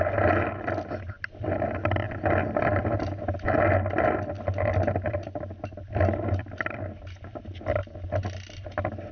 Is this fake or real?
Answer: real